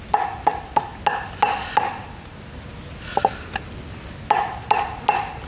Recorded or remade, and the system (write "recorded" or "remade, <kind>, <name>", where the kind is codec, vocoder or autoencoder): recorded